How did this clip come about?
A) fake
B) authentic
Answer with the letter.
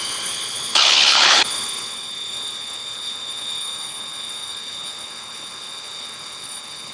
A